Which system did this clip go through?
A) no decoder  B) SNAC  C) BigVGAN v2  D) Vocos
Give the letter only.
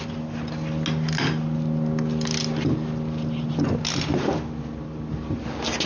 A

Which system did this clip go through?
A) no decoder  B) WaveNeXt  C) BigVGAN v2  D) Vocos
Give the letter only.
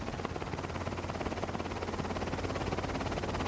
A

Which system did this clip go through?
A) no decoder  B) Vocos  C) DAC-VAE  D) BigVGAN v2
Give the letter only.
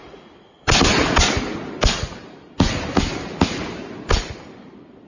A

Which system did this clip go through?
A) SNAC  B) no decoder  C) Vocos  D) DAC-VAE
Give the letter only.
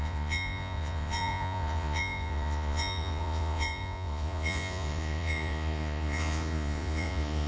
C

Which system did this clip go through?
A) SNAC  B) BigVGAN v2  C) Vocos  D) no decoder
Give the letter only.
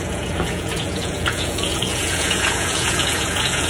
C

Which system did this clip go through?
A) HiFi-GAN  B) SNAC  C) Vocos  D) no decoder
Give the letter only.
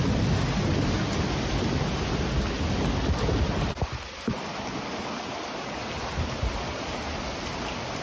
D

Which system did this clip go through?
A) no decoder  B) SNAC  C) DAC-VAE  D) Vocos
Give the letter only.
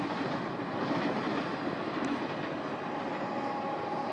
A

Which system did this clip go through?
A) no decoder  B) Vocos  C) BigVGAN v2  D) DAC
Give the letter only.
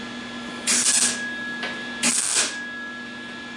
A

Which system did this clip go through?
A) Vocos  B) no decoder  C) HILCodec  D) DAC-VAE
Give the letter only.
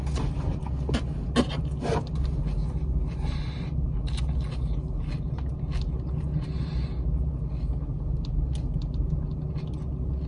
B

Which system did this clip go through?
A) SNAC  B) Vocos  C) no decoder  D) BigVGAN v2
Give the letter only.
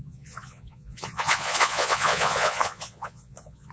B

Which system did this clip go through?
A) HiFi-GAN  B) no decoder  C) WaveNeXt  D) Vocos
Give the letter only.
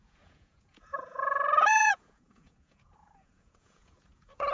D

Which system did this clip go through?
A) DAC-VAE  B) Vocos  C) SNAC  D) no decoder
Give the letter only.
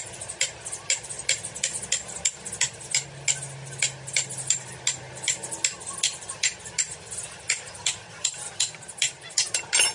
D